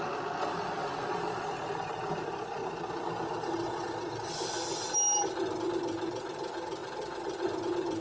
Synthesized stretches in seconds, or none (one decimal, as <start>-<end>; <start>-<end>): 0.8-3.3; 6.8-8.0

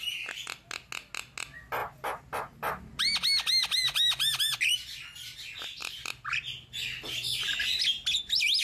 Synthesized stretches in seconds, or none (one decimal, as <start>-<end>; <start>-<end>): none

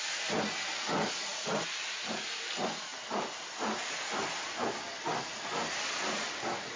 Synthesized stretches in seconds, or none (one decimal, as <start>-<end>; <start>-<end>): none